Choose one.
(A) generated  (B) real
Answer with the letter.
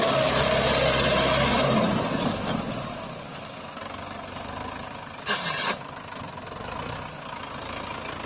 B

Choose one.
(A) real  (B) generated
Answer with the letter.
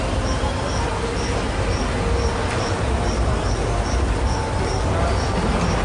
A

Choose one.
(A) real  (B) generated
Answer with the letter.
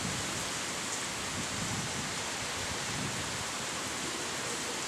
A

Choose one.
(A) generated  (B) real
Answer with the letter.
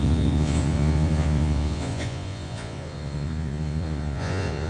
A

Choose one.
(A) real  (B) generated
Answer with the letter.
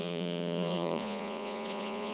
B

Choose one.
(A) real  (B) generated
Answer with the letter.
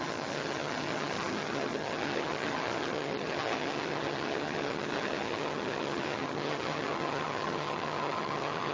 B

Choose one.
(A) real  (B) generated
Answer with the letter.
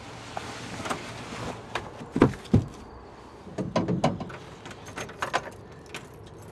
A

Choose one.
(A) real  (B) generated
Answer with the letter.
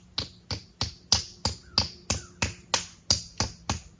A